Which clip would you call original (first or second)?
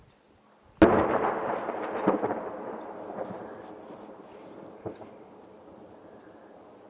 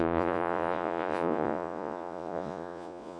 first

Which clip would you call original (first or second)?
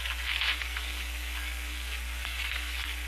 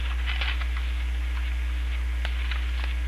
second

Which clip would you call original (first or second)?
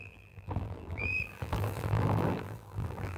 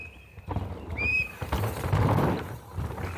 second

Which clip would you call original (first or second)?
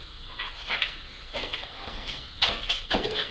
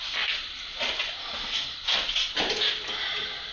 second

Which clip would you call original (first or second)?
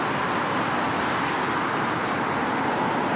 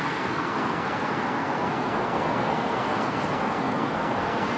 first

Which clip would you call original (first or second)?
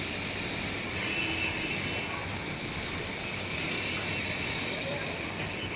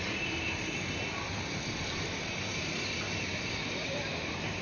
first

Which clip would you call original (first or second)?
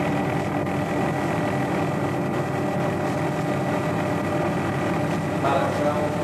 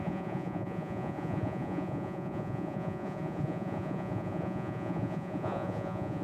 first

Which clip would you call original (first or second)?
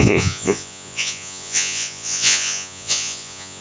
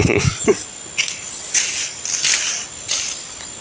second